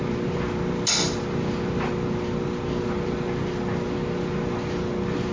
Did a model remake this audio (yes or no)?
no